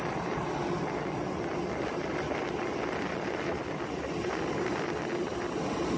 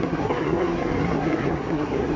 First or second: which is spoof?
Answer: second